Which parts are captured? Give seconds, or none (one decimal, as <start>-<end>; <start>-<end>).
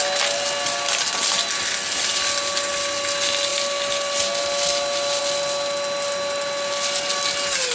0.0-7.7